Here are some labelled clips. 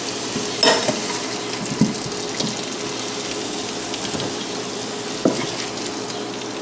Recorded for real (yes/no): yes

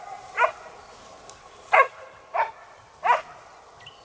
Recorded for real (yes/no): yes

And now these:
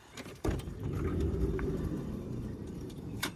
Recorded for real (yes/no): no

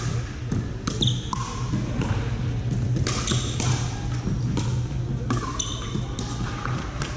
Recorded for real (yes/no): yes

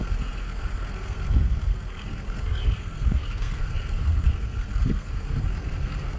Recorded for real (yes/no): no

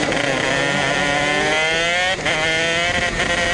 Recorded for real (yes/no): yes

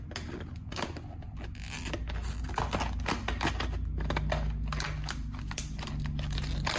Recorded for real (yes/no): yes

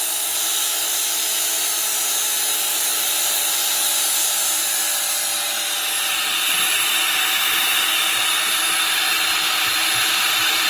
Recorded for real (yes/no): yes